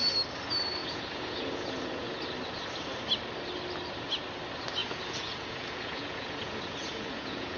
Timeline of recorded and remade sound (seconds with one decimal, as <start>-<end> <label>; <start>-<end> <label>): 0.0-0.8 recorded; 0.8-2.2 remade; 2.2-4.8 recorded; 4.8-7.6 remade